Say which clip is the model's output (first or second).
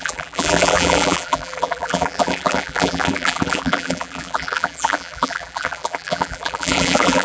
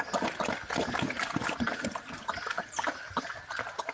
first